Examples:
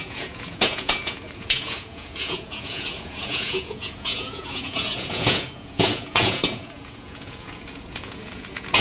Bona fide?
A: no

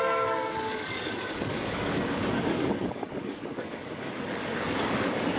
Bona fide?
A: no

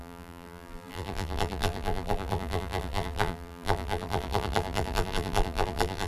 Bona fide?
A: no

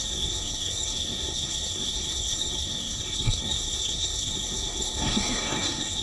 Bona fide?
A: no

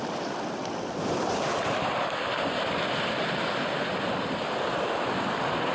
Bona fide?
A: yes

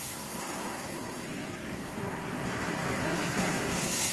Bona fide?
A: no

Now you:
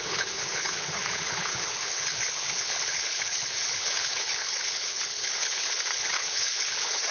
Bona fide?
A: no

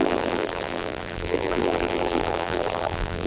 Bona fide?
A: no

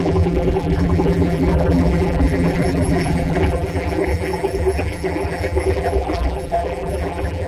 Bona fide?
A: no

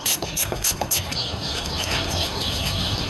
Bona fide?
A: no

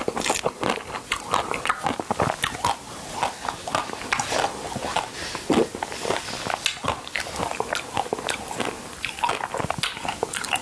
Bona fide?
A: yes